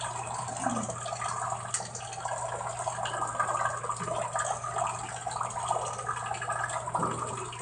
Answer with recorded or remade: recorded